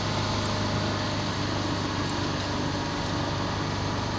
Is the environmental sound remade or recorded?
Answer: recorded